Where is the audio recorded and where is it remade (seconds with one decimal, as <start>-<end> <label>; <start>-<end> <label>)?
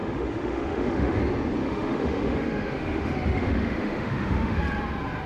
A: 0.0-1.2 remade; 1.2-1.6 recorded; 1.6-4.6 remade; 4.6-5.3 recorded